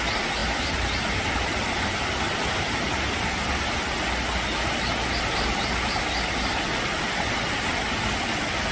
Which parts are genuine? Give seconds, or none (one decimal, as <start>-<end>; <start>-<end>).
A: 0.0-8.7